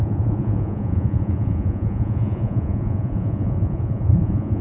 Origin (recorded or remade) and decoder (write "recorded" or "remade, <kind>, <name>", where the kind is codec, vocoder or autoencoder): remade, vocoder, Vocos